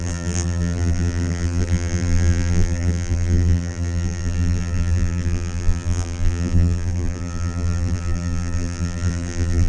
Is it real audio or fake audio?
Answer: fake